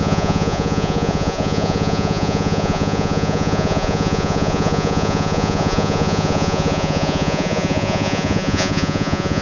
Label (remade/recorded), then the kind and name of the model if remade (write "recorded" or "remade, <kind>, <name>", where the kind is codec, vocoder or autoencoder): remade, vocoder, Vocos